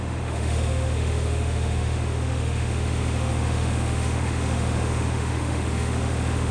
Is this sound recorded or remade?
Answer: remade